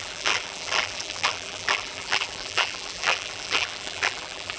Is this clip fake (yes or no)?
yes